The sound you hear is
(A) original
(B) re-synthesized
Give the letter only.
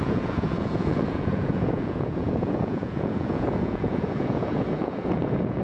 B